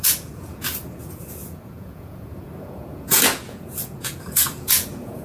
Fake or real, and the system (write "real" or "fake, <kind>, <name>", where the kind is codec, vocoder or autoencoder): fake, vocoder, Vocos